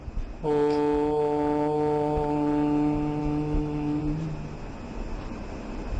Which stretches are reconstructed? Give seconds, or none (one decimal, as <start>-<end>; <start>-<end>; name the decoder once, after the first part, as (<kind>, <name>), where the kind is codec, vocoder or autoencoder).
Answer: 3.2-4.0 (autoencoder, DAC-VAE)